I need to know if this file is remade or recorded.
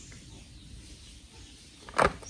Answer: recorded